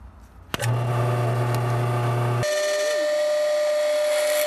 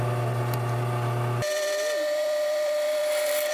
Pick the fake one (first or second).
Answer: second